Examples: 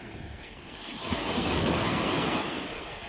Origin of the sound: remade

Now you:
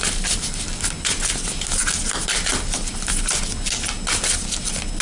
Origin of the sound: recorded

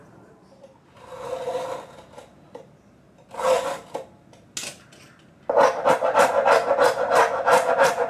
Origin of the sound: recorded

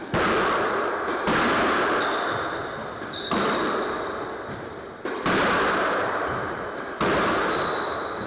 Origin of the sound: recorded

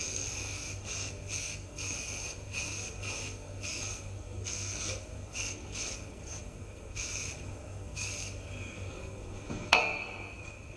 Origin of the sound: remade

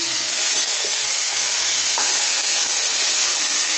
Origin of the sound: remade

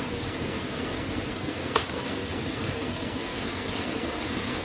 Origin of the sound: remade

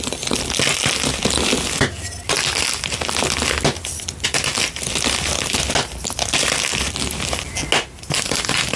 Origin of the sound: recorded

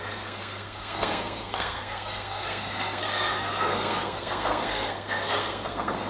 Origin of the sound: remade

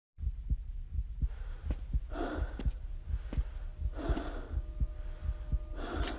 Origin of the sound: recorded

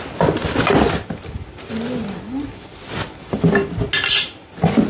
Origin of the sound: recorded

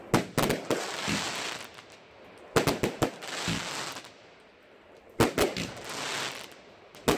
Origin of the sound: recorded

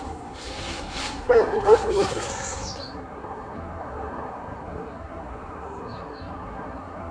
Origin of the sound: remade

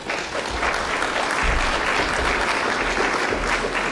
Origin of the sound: recorded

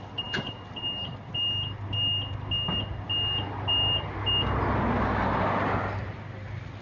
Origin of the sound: recorded